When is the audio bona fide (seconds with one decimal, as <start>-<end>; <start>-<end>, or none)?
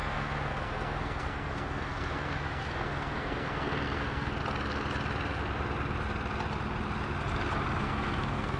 4.4-7.8